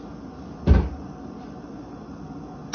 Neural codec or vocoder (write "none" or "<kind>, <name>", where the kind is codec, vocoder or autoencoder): none